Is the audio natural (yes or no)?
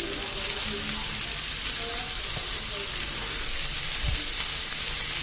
yes